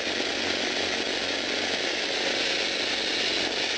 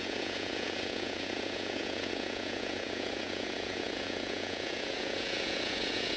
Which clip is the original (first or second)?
first